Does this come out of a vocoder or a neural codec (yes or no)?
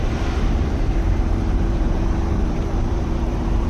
yes